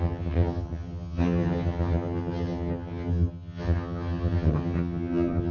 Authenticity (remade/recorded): remade